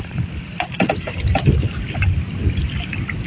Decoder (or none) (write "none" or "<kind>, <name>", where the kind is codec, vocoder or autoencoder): none